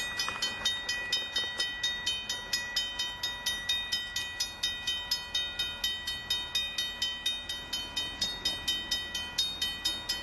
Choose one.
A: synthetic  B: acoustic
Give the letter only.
B